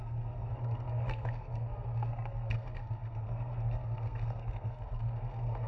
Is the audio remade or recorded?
remade